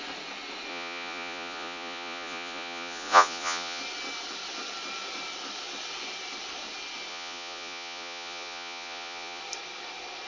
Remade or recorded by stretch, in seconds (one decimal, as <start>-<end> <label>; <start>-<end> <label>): 0.0-0.7 recorded; 0.7-3.8 remade; 3.8-7.1 recorded; 7.1-9.4 remade; 9.4-10.3 recorded